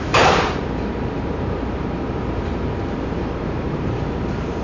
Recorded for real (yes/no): no